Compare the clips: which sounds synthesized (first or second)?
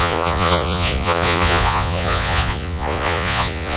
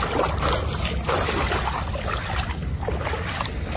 first